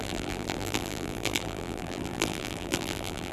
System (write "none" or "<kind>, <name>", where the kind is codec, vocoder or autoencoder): vocoder, BigVGAN v2